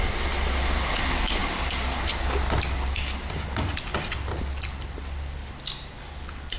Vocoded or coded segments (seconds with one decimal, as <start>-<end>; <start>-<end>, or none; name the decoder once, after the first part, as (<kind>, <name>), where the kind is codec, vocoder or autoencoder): none